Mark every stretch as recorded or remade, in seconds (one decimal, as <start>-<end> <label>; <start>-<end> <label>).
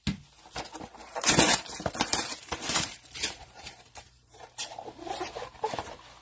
0.0-1.0 recorded; 1.0-4.7 remade; 4.7-6.2 recorded